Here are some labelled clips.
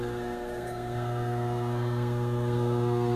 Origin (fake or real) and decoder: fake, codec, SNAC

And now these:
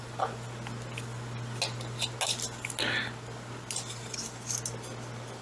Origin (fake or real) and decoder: real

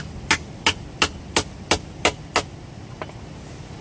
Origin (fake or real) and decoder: real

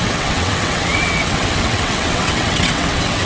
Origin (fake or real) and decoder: fake, vocoder, WaveNeXt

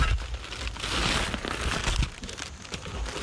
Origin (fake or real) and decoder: real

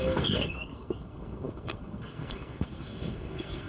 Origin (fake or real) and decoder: fake, codec, SNAC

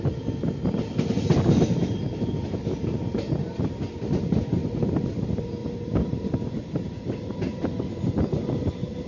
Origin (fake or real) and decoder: real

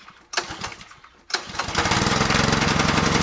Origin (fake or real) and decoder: real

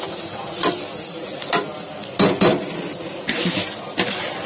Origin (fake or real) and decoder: real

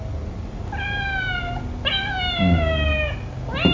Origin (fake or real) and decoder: real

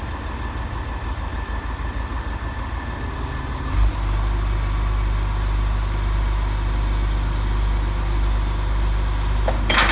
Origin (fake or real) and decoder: real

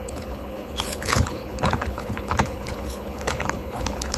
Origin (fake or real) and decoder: fake, codec, HILCodec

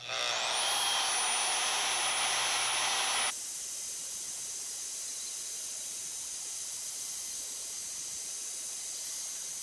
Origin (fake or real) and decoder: real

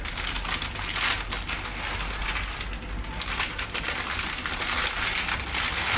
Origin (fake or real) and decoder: real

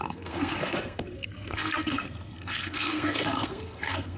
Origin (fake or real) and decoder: fake, codec, SNAC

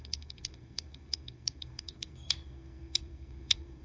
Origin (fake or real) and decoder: fake, codec, SNAC